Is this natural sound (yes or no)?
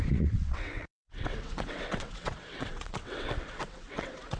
no